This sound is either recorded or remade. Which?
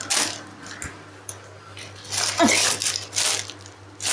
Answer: recorded